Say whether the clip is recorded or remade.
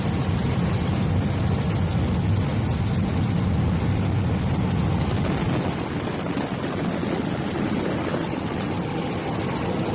recorded